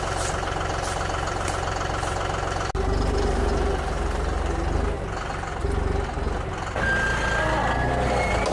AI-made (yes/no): no